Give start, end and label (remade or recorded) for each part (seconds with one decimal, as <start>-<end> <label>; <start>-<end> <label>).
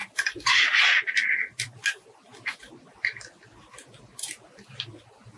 0.0-5.4 recorded